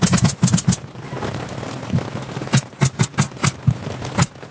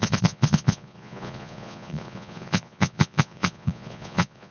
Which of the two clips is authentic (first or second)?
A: first